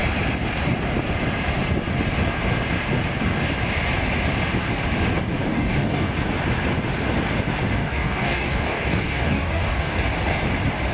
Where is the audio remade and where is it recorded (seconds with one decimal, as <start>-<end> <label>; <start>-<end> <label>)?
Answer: 0.0-5.4 recorded; 5.4-6.1 remade; 6.1-7.8 recorded; 7.8-10.0 remade; 10.0-10.9 recorded